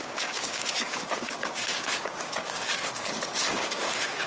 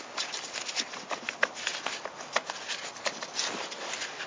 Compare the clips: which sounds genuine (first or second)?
second